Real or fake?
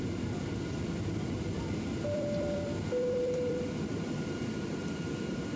fake